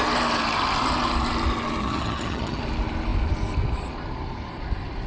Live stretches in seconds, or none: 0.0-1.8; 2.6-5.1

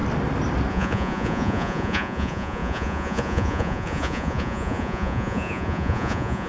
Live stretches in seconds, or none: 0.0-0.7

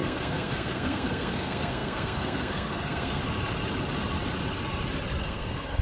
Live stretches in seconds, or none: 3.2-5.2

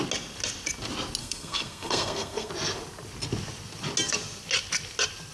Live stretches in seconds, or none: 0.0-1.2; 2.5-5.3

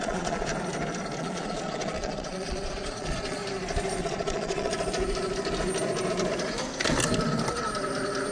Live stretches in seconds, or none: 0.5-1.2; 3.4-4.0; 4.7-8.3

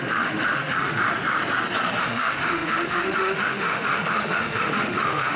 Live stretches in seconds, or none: 1.0-2.0

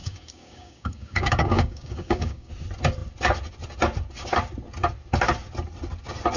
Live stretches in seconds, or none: 2.5-6.4

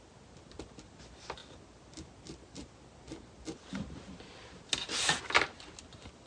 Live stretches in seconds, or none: 0.0-6.3